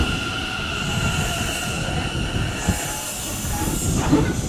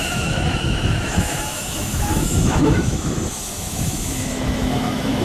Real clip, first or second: first